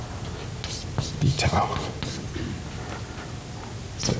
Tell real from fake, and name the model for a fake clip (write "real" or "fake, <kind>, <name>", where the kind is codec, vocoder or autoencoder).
real